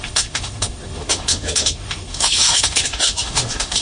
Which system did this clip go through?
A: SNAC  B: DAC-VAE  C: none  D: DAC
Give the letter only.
B